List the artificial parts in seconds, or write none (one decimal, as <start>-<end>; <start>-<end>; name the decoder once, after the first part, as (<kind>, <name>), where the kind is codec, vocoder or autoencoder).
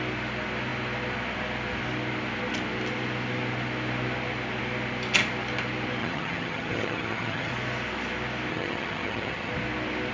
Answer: 6.0-7.5 (vocoder, HiFi-GAN); 8.5-9.5